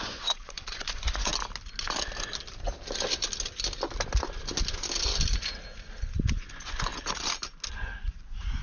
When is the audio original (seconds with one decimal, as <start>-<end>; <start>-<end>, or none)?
1.3-6.3; 6.9-7.7